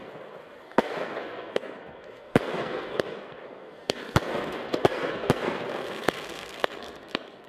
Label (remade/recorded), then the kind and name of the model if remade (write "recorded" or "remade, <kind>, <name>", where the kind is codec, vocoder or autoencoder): remade, codec, SNAC